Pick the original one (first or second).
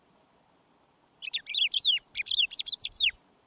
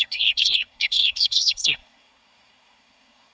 first